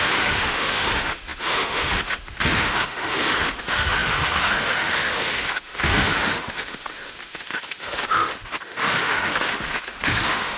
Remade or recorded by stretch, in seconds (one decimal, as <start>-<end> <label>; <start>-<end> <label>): 0.0-10.6 remade